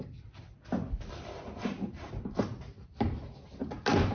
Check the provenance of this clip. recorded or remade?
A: recorded